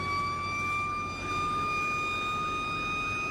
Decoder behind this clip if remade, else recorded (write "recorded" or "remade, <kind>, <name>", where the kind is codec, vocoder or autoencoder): recorded